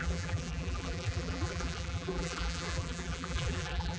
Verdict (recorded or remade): remade